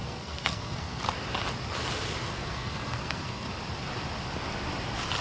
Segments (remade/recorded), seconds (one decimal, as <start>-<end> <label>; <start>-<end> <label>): 0.0-1.0 remade; 1.0-2.3 recorded; 2.3-3.5 remade; 3.5-5.2 recorded